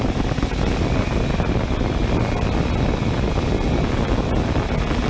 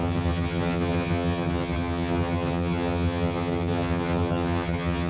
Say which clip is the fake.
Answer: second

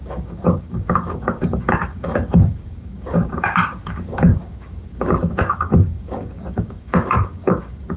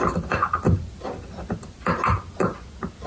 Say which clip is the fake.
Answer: first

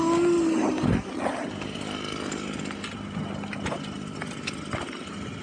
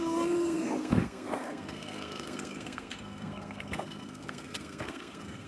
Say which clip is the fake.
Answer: second